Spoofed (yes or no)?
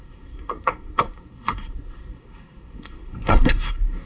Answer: yes